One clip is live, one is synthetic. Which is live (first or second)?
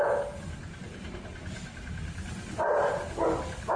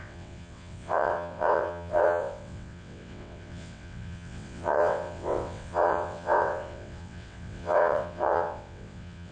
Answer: first